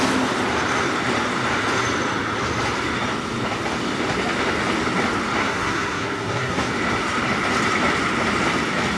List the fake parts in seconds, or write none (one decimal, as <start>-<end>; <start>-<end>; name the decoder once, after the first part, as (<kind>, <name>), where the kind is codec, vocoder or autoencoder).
5.4-6.7 (codec, SNAC)